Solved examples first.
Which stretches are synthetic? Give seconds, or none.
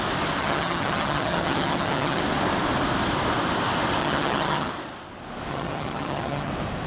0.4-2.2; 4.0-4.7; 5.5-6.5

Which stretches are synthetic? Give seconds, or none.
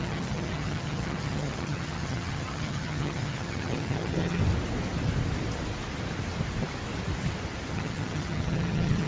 0.0-4.4; 7.7-9.1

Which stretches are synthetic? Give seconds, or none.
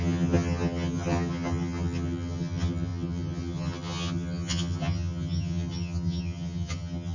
0.0-7.1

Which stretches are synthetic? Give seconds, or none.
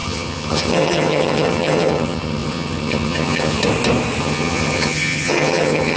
0.0-3.6; 4.2-6.0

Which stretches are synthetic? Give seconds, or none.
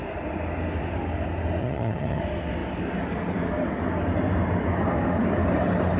1.6-2.2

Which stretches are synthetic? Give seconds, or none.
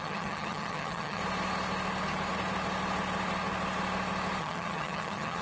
0.0-1.2; 4.4-5.4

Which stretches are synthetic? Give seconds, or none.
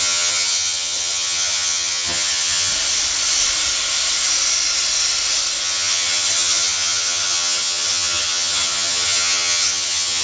0.0-2.7; 5.6-10.2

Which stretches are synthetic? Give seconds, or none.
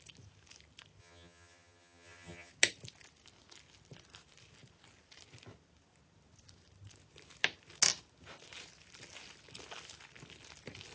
1.0-2.5